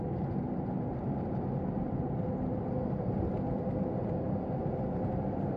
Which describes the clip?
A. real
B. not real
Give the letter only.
A